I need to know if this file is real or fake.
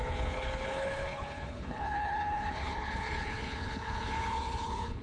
fake